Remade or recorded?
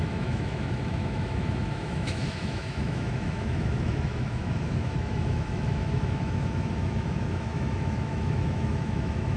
remade